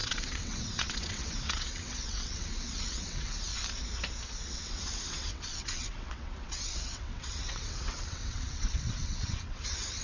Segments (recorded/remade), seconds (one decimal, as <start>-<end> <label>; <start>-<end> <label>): 0.0-3.5 remade; 3.5-4.4 recorded; 4.4-10.0 remade